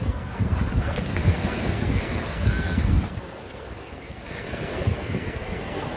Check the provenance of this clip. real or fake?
fake